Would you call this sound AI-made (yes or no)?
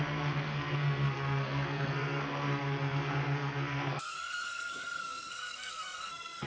yes